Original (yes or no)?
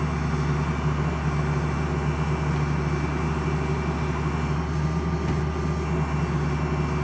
yes